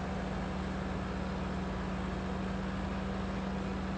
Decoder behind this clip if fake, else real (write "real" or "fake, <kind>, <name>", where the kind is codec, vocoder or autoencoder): real